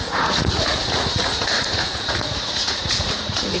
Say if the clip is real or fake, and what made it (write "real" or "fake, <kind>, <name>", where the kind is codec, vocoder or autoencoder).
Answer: fake, vocoder, Vocos